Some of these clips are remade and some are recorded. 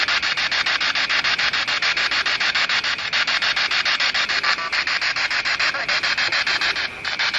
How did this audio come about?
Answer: recorded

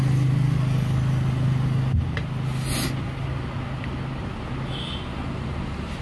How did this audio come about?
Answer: recorded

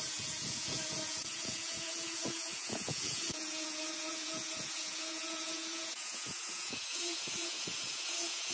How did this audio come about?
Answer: remade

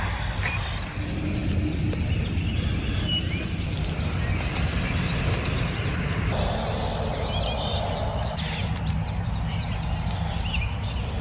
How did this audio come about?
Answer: recorded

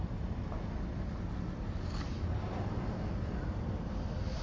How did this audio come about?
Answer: recorded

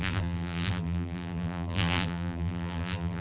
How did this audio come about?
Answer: remade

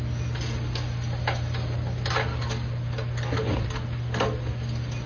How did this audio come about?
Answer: recorded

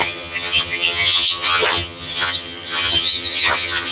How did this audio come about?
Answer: remade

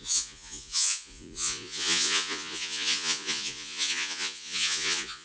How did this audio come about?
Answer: remade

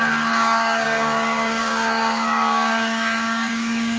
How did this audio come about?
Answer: remade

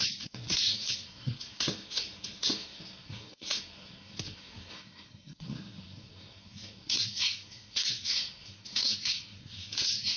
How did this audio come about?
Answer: remade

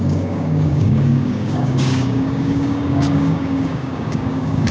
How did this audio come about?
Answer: remade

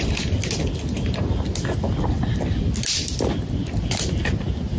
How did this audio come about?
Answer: recorded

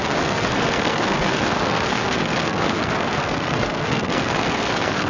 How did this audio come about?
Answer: remade